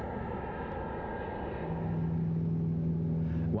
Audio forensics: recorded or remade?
recorded